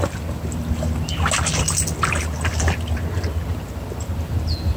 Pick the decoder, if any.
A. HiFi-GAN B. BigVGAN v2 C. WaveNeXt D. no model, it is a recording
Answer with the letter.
D